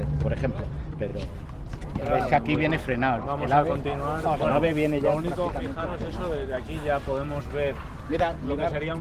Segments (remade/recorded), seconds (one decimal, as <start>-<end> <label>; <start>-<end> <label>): 0.0-9.0 recorded